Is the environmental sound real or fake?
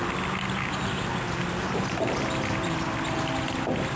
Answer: real